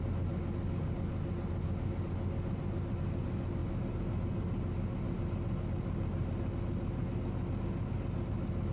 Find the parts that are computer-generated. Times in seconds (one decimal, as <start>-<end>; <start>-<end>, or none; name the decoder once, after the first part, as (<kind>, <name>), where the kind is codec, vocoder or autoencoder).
none

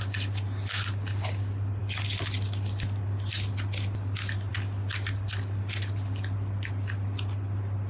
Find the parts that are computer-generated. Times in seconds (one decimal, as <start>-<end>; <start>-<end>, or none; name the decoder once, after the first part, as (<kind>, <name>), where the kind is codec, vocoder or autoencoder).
none